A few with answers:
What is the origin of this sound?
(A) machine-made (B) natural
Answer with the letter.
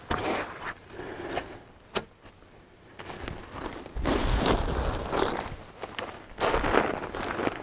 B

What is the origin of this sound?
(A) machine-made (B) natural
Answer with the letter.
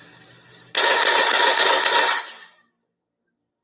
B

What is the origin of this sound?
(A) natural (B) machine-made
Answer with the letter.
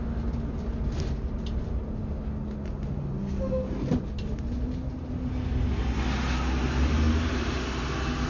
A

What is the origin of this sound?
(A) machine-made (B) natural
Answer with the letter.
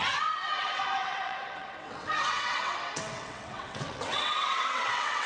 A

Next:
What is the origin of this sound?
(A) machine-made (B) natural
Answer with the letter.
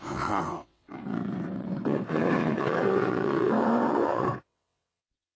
A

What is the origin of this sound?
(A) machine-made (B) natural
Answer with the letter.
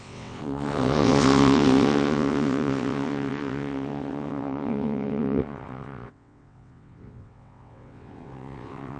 A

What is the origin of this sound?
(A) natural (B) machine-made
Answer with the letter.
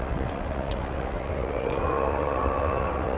B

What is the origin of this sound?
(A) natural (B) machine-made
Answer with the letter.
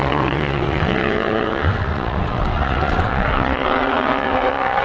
B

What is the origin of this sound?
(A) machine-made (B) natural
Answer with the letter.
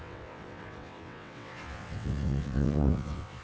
A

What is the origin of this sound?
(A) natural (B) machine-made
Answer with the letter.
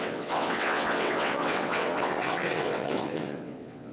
B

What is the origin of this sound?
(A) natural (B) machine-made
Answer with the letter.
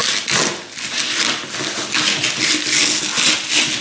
A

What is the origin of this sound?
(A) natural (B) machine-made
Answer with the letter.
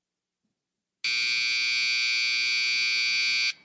A